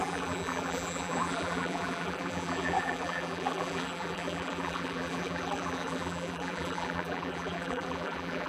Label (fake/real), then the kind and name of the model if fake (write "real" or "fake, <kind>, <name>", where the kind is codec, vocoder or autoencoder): fake, vocoder, BigVGAN v2